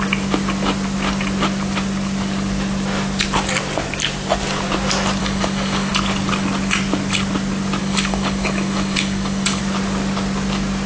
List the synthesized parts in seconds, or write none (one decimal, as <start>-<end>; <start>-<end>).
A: 5.2-5.9; 7.8-9.6